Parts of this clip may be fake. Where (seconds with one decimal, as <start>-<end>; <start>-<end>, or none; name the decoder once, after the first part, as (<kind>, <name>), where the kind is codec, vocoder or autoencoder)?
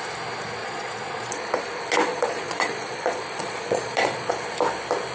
0.6-1.6 (vocoder, Vocos); 2.1-4.3